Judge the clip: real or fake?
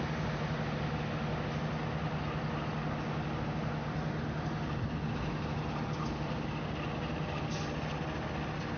real